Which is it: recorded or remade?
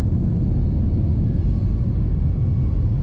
recorded